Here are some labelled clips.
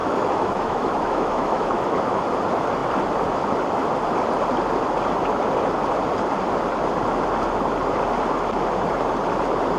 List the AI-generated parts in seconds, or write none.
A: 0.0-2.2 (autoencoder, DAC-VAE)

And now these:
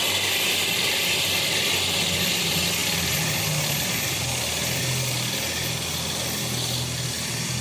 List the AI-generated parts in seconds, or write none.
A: none